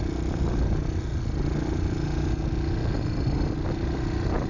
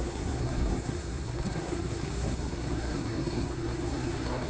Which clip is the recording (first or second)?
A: first